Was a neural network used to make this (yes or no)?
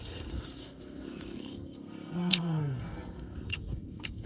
yes